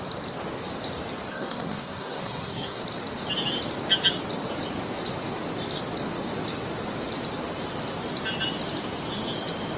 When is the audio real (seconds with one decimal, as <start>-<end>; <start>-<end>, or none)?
0.0-1.3; 2.8-9.8